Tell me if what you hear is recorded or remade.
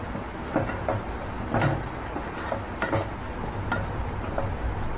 recorded